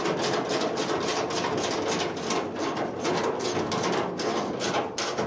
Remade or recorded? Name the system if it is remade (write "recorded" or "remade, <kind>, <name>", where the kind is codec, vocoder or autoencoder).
recorded